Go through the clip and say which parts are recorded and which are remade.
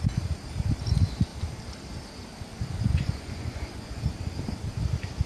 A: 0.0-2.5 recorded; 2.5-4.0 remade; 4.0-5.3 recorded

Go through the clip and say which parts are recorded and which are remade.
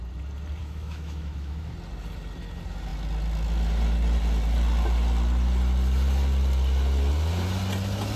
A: 0.0-0.6 recorded; 0.6-1.7 remade; 1.7-8.2 recorded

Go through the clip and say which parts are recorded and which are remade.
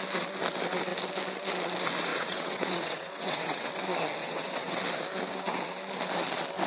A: 0.0-2.1 recorded; 2.1-3.7 remade; 3.7-4.2 recorded; 4.2-4.8 remade; 4.8-6.7 recorded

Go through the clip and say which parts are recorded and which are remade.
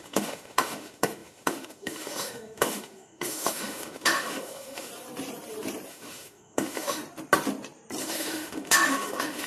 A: 0.0-4.9 remade; 4.9-5.9 recorded; 5.9-7.0 remade; 7.0-8.0 recorded; 8.0-9.5 remade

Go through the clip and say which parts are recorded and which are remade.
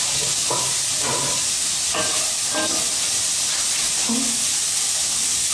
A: 0.0-5.5 recorded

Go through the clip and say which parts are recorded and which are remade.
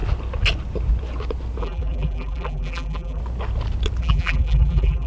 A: 0.0-1.6 recorded; 1.6-3.2 remade; 3.2-4.0 recorded; 4.0-5.1 remade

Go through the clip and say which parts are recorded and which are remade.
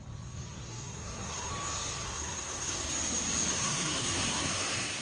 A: 0.0-0.7 recorded; 0.7-1.5 remade; 1.5-2.0 recorded; 2.0-2.8 remade; 2.8-3.5 recorded; 3.5-5.0 remade